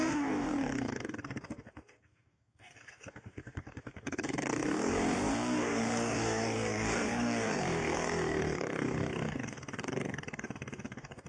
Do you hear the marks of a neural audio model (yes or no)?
yes